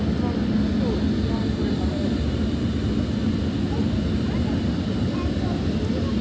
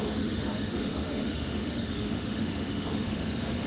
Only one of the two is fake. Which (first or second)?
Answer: second